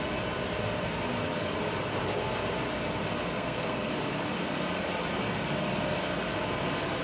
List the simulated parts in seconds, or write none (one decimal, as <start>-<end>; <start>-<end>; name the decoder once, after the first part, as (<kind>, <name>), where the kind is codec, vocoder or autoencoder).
3.3-3.9 (codec, SNAC)